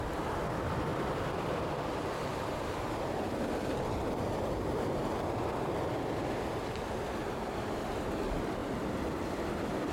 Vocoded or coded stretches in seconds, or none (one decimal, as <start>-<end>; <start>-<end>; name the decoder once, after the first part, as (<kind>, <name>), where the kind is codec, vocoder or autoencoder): 0.9-1.8 (vocoder, BigVGAN v2); 2.3-5.1; 7.2-7.8